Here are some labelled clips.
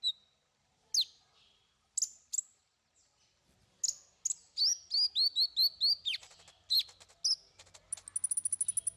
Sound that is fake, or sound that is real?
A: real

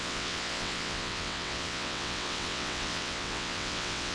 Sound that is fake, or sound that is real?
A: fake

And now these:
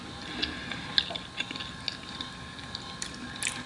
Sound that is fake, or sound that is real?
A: real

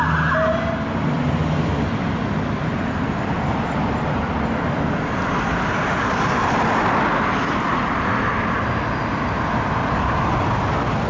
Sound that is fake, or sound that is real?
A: real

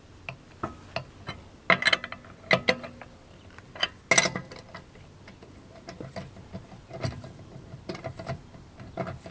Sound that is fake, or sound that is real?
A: real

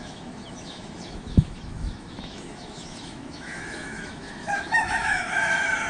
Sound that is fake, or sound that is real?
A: fake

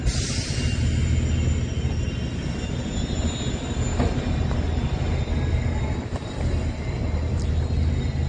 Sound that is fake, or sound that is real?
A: real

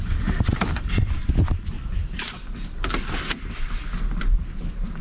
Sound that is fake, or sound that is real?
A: real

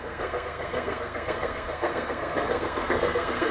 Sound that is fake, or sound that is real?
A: fake